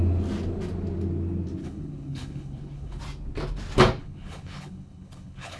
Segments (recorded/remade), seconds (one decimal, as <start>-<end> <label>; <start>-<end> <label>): 0.0-1.6 recorded; 1.6-3.0 remade; 3.0-4.0 recorded; 4.0-5.6 remade